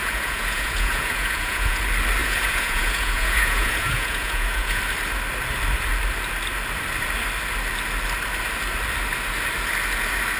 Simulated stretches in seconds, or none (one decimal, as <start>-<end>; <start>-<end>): 0.0-1.8; 2.2-4.8